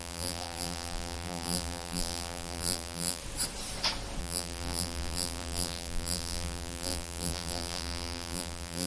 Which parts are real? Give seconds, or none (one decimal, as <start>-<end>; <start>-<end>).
3.2-4.2